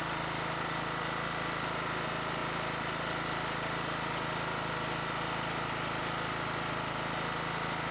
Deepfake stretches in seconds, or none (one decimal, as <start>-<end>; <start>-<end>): none